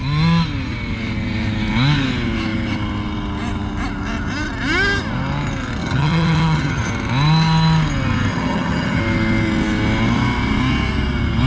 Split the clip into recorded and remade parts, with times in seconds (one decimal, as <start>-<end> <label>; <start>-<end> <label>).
0.0-5.8 recorded; 5.8-6.9 remade; 6.9-8.3 recorded; 8.3-9.0 remade; 9.0-11.5 recorded

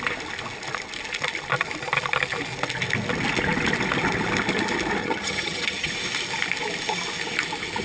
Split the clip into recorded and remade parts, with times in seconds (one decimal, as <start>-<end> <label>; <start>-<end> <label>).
0.0-5.0 recorded; 5.0-5.9 remade; 5.9-7.8 recorded

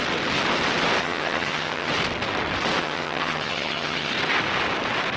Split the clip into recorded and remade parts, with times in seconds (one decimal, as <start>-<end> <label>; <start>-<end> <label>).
0.0-1.0 recorded; 1.0-1.9 remade; 1.9-2.8 recorded; 2.8-4.1 remade; 4.1-5.2 recorded

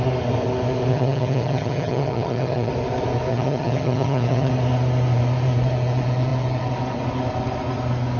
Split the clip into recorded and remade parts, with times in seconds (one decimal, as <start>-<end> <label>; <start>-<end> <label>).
0.0-0.9 recorded; 0.9-2.7 remade; 2.7-3.3 recorded; 3.3-4.5 remade; 4.5-8.2 recorded

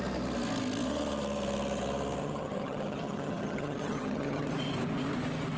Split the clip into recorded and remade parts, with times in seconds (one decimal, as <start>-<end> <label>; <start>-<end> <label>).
0.0-2.2 recorded; 2.2-4.5 remade; 4.5-5.6 recorded

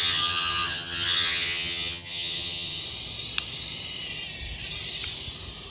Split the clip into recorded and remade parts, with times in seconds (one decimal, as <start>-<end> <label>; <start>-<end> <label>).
0.0-2.8 remade; 2.8-5.7 recorded

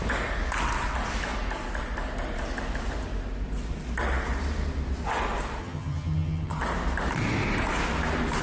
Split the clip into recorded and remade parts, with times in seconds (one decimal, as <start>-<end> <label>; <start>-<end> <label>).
0.0-5.6 recorded; 5.6-6.6 remade; 6.6-8.4 recorded

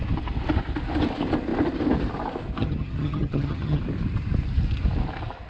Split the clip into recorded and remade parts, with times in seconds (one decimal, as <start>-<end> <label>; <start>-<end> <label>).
0.0-2.6 recorded; 2.6-3.8 remade; 3.8-5.5 recorded